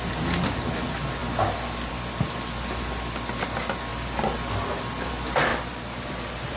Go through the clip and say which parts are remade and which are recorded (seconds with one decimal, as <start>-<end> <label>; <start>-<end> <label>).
0.0-6.6 recorded